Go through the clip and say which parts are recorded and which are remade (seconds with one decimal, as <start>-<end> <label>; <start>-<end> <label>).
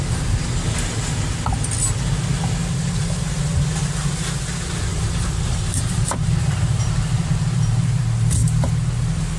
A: 0.0-4.9 recorded; 4.9-8.0 remade; 8.0-9.4 recorded